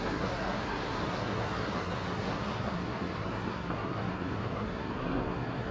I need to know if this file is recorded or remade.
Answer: remade